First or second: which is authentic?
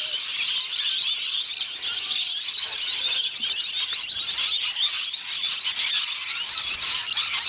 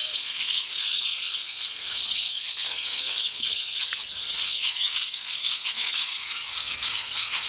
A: first